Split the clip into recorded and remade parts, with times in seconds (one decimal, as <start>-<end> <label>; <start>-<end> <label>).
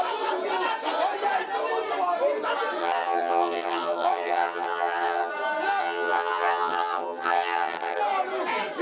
0.0-2.8 recorded; 2.8-5.3 remade; 5.3-5.8 recorded; 5.8-8.0 remade; 8.0-8.8 recorded